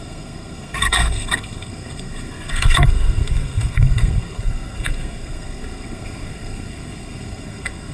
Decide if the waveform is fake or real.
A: fake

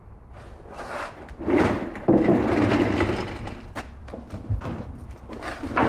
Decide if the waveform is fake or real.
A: fake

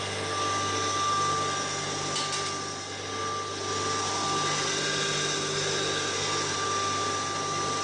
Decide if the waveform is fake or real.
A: real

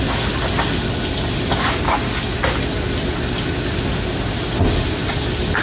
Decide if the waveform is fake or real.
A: real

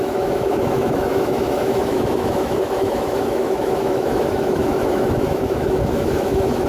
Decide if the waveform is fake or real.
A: fake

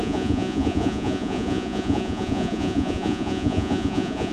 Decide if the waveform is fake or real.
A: fake